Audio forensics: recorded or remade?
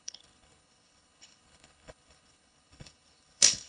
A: remade